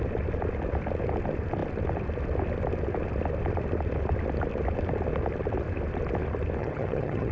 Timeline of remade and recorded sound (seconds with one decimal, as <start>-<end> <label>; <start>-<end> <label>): 0.0-6.6 recorded; 6.6-7.3 remade

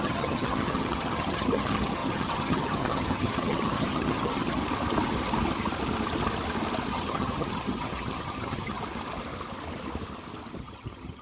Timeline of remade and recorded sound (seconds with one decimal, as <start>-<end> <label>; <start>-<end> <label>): 0.0-4.6 remade; 4.6-6.9 recorded; 6.9-8.8 remade; 8.8-10.6 recorded; 10.6-11.2 remade

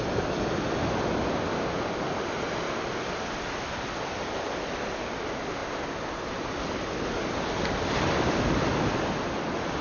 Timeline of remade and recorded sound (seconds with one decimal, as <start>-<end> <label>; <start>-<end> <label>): 0.0-9.8 recorded

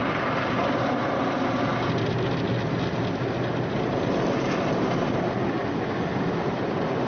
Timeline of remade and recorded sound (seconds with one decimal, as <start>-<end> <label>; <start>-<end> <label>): 0.0-7.1 recorded

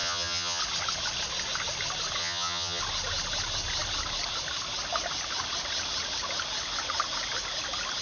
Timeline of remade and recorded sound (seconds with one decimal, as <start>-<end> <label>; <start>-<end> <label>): 0.0-0.6 remade; 0.6-2.2 recorded; 2.2-2.8 remade; 2.8-8.0 recorded

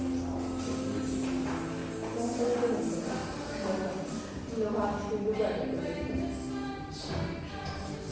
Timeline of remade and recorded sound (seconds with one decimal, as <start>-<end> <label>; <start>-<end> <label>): 0.0-8.1 recorded